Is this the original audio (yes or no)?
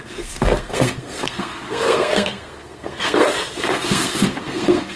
no